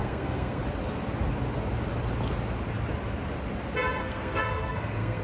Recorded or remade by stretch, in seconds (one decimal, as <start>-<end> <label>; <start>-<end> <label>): 0.0-0.6 remade; 0.6-4.0 recorded; 4.0-5.2 remade